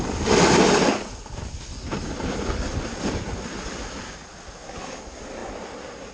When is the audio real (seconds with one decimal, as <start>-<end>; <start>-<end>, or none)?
0.0-6.1